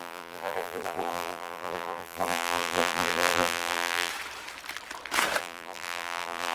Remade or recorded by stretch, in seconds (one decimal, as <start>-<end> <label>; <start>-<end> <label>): 0.0-4.1 remade; 4.1-5.4 recorded; 5.4-6.5 remade